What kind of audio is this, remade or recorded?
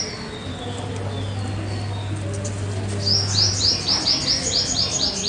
recorded